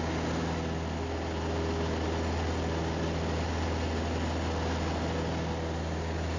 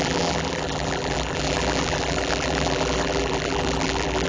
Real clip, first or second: first